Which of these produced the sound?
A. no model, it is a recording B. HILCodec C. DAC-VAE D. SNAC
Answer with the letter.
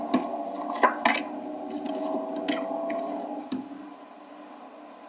A